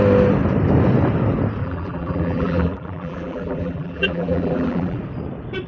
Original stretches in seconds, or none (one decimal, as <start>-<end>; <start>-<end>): 0.0-1.6; 5.0-5.7